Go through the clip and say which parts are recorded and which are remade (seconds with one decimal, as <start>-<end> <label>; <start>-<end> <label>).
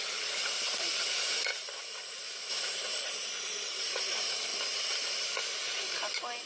0.0-6.5 recorded